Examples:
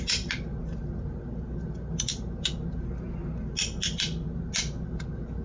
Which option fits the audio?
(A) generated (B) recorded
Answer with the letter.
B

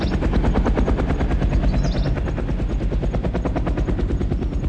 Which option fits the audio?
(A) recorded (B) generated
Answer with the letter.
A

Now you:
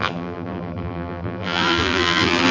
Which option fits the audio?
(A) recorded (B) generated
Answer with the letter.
B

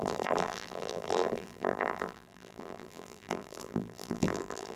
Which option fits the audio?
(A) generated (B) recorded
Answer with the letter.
A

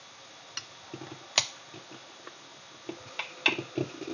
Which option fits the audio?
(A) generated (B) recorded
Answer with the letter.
B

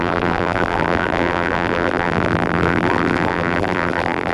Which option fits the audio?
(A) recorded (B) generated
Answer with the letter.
B